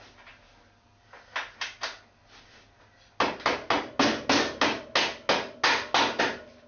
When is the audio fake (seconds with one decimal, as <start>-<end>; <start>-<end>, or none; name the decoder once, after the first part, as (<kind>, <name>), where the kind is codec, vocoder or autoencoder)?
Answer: none